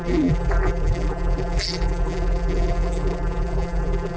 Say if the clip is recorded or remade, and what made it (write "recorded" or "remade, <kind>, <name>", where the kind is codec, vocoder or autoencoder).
remade, vocoder, BigVGAN v2